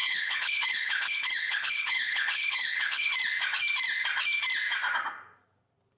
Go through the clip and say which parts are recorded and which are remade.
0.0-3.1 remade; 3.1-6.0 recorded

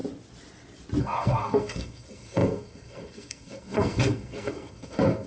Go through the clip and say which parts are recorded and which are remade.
0.0-1.0 recorded; 1.0-5.3 remade

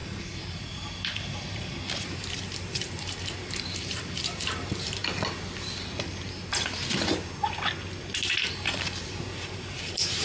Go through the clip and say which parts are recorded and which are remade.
0.0-5.0 remade; 5.0-8.5 recorded; 8.5-10.2 remade

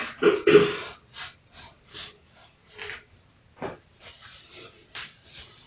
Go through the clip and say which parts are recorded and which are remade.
0.0-1.9 recorded; 1.9-2.6 remade; 2.6-5.7 recorded

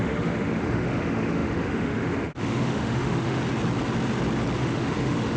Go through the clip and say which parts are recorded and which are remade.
0.0-3.4 remade; 3.4-4.6 recorded; 4.6-5.4 remade

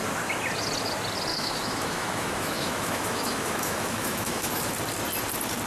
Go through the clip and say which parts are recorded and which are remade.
0.0-1.3 recorded; 1.3-4.7 remade; 4.7-5.7 recorded